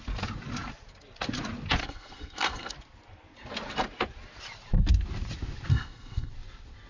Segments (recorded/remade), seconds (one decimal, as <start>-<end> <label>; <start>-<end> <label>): 0.0-1.8 recorded; 1.8-2.7 remade; 2.7-5.7 recorded; 5.7-6.3 remade; 6.3-6.9 recorded